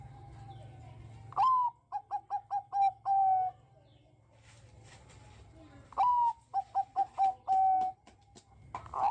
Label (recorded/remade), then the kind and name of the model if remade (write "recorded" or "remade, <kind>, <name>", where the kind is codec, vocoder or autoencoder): recorded